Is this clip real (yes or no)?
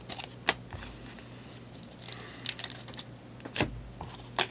yes